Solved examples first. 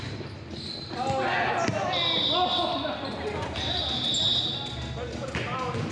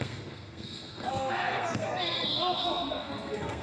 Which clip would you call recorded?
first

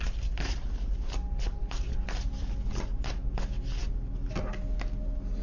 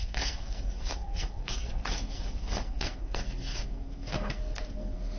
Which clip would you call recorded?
first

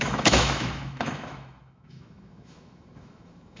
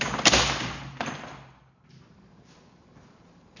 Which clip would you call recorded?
second